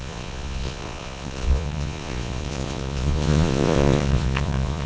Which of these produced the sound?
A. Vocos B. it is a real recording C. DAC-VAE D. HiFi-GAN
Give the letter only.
A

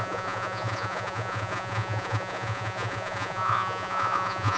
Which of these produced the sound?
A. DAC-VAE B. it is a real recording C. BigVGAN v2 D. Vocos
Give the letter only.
D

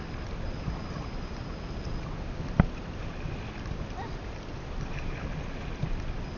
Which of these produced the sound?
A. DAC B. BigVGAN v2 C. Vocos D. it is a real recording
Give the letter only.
D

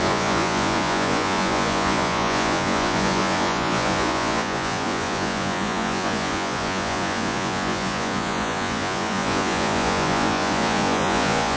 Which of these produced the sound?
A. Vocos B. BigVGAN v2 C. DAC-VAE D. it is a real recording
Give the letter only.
A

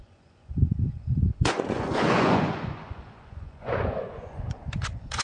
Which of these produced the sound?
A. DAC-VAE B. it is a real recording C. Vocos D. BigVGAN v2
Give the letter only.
C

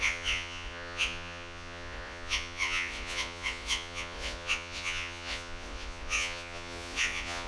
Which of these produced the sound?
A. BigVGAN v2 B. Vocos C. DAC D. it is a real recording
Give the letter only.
B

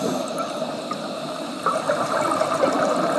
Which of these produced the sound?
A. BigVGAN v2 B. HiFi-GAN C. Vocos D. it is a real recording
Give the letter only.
D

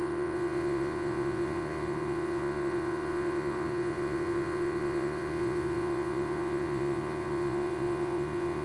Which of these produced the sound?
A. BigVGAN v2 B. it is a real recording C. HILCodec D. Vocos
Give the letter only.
D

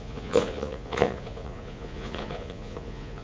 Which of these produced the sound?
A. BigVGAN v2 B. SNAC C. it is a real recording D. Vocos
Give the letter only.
D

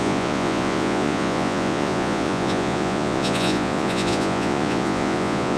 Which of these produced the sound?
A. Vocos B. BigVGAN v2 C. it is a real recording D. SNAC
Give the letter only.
A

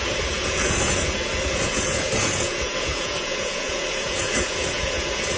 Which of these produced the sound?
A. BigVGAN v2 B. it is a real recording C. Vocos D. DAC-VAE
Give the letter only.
C